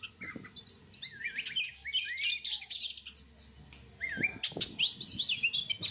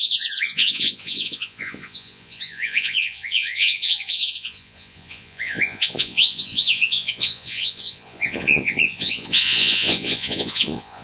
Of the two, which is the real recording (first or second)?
first